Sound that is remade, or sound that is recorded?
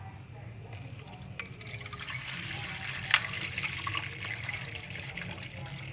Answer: recorded